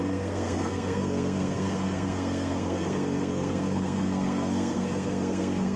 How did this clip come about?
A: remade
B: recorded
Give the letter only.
A